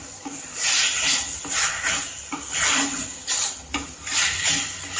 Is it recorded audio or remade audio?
recorded